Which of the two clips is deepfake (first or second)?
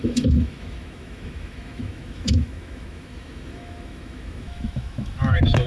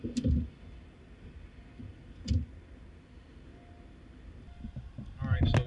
first